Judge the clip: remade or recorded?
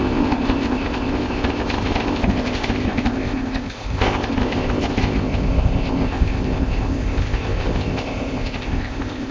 remade